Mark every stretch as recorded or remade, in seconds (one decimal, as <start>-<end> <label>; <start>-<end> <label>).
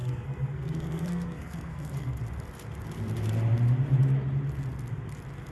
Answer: 0.0-2.2 remade; 2.2-5.5 recorded